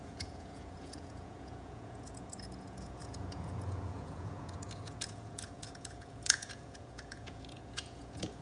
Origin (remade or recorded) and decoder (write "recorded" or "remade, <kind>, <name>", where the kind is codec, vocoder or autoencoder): remade, vocoder, Vocos